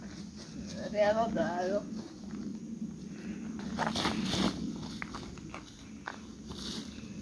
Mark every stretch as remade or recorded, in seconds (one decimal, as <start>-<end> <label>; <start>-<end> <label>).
0.0-0.7 recorded; 0.7-1.3 remade; 1.3-7.2 recorded